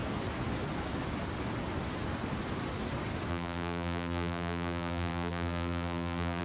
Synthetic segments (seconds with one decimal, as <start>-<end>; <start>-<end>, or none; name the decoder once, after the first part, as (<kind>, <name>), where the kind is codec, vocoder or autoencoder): 3.3-6.4 (vocoder, BigVGAN v2)